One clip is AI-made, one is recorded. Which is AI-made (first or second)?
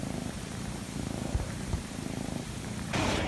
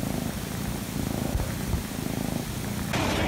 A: first